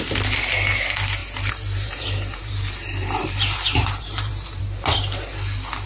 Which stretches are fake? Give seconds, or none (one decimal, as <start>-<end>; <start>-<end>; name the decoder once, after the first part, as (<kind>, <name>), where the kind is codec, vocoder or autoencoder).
1.2-4.6 (vocoder, BigVGAN v2)